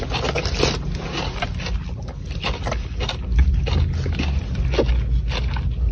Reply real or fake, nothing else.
real